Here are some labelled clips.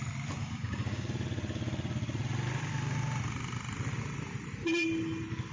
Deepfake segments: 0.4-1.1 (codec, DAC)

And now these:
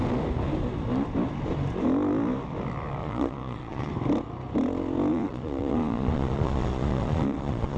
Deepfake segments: 3.0-3.9 (vocoder, Vocos); 5.1-7.8

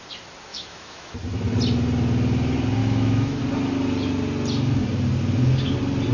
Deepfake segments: 0.5-1.1 (autoencoder, DAC-VAE); 2.8-3.4